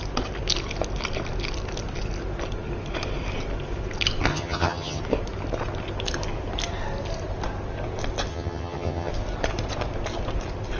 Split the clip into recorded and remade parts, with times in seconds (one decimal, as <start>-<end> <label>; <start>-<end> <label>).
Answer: 0.0-4.3 recorded; 4.3-5.0 remade; 5.0-8.3 recorded; 8.3-9.1 remade; 9.1-10.8 recorded